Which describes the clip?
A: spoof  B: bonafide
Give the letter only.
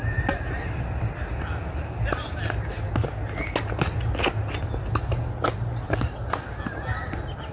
B